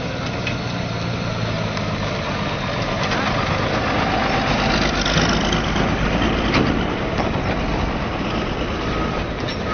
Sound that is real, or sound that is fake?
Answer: real